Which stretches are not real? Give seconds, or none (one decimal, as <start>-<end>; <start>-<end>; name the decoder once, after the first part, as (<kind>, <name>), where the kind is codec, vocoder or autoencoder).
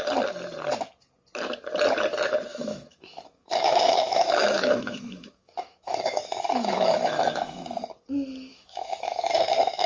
2.5-7.6 (autoencoder, DAC-VAE); 8.5-9.9